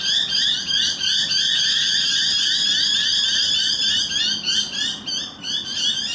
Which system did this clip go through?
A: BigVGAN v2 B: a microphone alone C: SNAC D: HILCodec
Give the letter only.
B